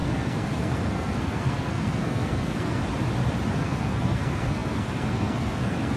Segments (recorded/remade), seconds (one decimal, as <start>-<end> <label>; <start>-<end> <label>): 0.0-2.8 remade; 2.8-3.6 recorded; 3.6-6.0 remade